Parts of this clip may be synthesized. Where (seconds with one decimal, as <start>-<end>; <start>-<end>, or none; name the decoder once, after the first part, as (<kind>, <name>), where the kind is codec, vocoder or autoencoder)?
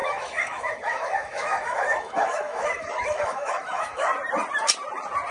0.0-4.1 (autoencoder, DAC-VAE)